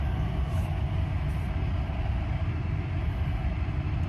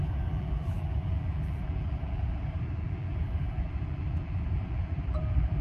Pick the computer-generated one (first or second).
second